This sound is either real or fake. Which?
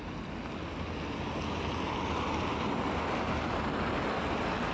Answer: real